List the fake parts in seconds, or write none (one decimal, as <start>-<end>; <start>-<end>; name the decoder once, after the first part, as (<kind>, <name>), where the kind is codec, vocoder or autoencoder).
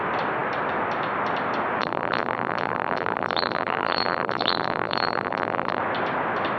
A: 1.8-5.8 (vocoder, BigVGAN v2)